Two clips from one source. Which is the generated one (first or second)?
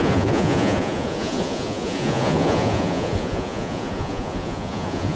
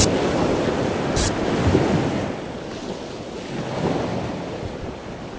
first